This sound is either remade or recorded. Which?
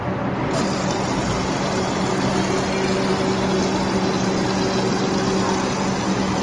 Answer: recorded